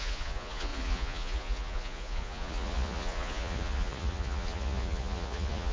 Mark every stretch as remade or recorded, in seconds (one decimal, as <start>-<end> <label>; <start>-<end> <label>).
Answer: 0.0-5.7 remade